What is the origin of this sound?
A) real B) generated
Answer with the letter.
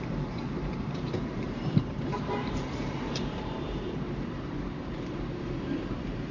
B